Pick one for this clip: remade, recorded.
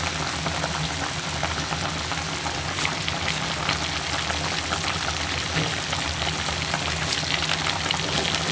recorded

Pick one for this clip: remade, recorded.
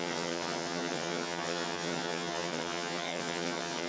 remade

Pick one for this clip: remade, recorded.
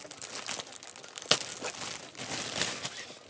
recorded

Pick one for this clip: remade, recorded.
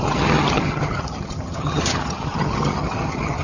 remade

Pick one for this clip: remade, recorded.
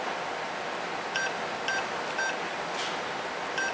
recorded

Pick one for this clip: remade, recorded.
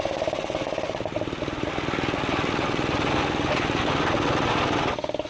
recorded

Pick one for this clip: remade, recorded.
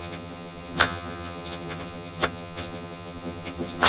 remade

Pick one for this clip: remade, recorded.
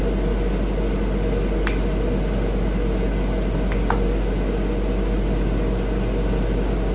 recorded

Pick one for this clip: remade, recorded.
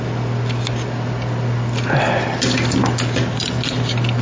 recorded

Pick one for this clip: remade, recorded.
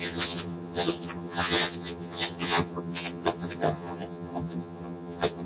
remade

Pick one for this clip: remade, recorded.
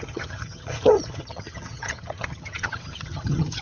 remade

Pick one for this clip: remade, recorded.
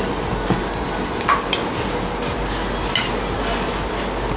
recorded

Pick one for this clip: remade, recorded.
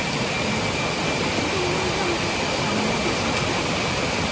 recorded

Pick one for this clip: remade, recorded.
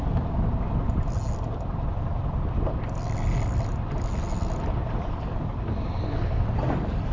recorded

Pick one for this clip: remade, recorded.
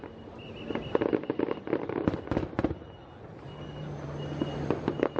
recorded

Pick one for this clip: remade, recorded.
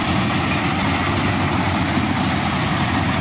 recorded